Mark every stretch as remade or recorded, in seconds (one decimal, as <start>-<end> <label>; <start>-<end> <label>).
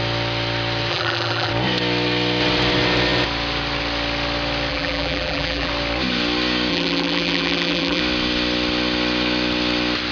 0.0-0.9 recorded; 0.9-1.5 remade; 1.5-4.7 recorded; 4.7-5.7 remade; 5.7-6.7 recorded; 6.7-8.0 remade; 8.0-10.1 recorded